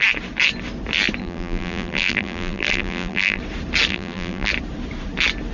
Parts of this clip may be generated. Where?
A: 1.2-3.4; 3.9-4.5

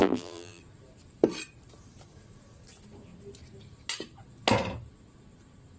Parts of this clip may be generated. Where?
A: 0.0-0.6